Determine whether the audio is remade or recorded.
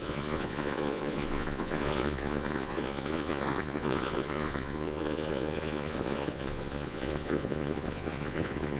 remade